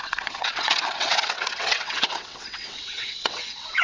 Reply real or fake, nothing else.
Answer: fake